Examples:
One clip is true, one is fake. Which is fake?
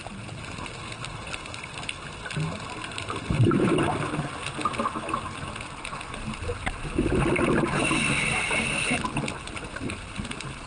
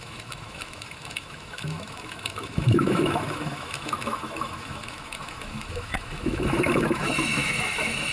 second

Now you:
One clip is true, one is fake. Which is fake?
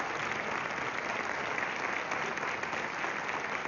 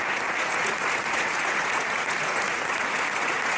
second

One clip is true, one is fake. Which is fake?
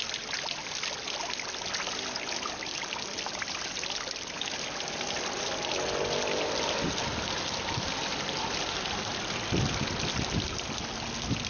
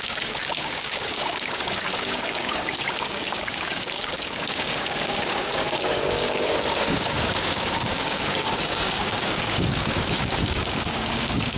second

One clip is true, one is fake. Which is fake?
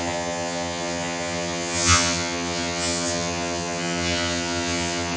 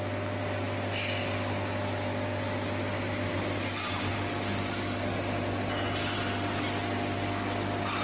first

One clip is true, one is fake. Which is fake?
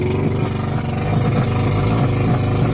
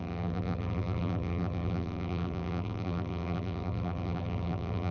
second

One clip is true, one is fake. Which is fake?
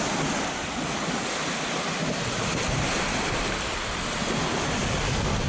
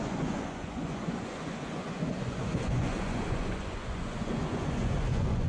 second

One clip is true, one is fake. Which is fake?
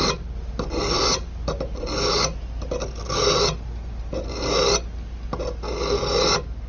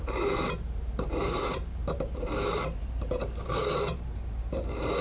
second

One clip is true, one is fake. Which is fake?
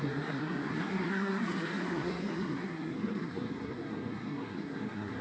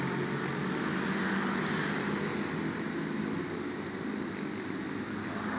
first